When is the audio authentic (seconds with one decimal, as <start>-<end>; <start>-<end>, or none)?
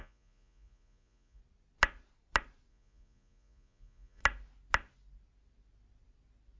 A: 1.4-2.7; 4.2-6.6